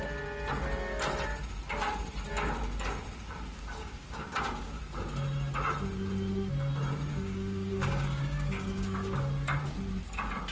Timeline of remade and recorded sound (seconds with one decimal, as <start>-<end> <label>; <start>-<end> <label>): 0.0-3.8 recorded; 3.8-4.8 remade; 4.8-7.1 recorded; 7.1-9.2 remade; 9.2-10.5 recorded